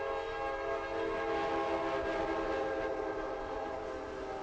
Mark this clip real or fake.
real